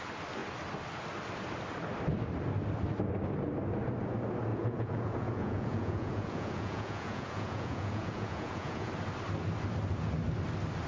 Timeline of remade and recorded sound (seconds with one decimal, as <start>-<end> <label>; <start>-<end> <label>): 0.0-4.5 recorded; 4.5-8.9 remade; 8.9-10.9 recorded